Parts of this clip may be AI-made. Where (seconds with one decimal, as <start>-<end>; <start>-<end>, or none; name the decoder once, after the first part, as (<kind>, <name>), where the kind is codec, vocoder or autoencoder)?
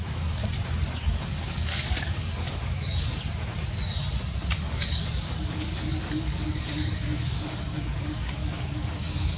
0.0-0.4 (codec, DAC); 0.9-3.2; 4.6-9.4